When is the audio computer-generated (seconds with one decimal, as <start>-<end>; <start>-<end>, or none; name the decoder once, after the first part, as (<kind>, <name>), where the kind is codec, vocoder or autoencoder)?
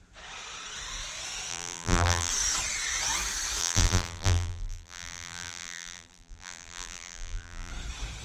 1.5-2.3 (vocoder, BigVGAN v2); 3.6-7.7